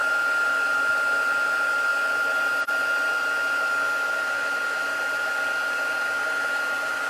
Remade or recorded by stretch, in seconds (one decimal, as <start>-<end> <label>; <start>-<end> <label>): 0.0-7.1 recorded